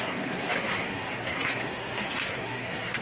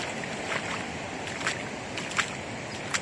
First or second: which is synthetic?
first